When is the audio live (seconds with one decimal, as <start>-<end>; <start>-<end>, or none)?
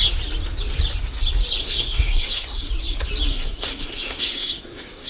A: 0.0-1.6; 2.7-3.3